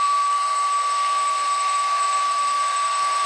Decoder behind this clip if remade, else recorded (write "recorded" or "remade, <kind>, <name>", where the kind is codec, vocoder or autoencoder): remade, codec, SNAC